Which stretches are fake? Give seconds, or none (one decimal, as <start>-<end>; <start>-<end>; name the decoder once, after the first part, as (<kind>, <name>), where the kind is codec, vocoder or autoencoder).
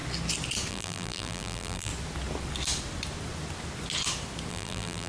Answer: 0.7-1.9 (vocoder, BigVGAN v2); 4.5-5.1